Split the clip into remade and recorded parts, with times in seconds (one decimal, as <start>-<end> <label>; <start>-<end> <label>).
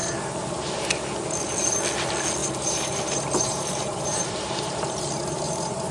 0.0-0.7 remade; 0.7-2.4 recorded; 2.4-5.9 remade